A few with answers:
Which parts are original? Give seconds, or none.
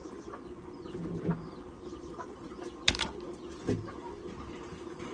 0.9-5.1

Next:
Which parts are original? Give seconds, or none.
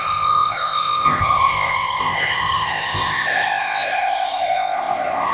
none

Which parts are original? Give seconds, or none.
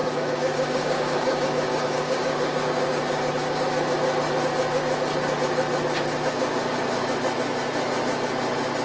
3.3-8.8